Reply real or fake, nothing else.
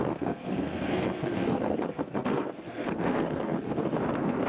fake